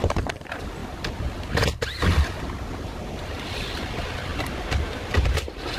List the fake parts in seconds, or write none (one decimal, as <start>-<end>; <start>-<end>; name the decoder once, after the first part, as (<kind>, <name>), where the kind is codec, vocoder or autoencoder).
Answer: 0.0-0.8 (vocoder, BigVGAN v2); 2.7-5.8